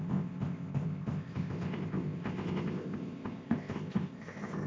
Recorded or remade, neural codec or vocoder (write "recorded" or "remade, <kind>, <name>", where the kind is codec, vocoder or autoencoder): remade, codec, ZipCodec